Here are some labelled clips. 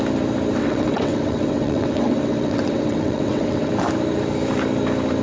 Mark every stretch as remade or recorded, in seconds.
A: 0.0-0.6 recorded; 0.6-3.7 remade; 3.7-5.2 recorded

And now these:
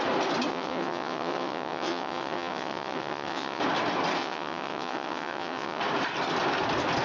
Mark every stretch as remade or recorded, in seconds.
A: 0.0-0.5 recorded; 0.5-3.6 remade; 3.6-4.2 recorded; 4.2-5.8 remade; 5.8-7.0 recorded

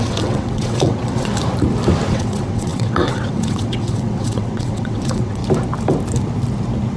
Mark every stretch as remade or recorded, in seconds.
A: 0.0-1.3 remade; 1.3-2.1 recorded; 2.1-5.4 remade; 5.4-7.0 recorded

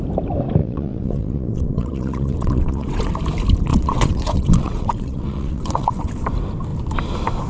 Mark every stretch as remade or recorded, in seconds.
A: 0.0-0.6 recorded; 0.6-3.1 remade; 3.1-3.7 recorded; 3.7-6.1 remade; 6.1-7.5 recorded

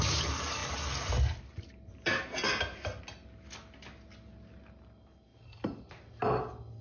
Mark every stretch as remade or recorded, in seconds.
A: 0.0-6.8 recorded